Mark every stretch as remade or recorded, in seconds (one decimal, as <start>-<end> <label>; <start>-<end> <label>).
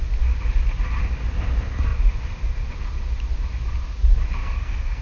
0.0-4.4 recorded; 4.4-5.0 remade